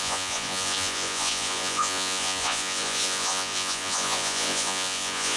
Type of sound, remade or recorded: remade